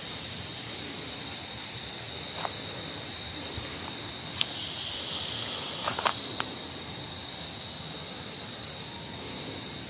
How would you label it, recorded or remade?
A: recorded